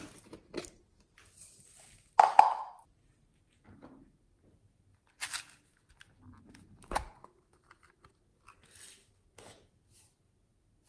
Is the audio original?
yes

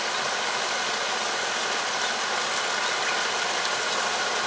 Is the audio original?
yes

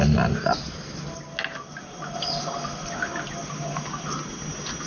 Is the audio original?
yes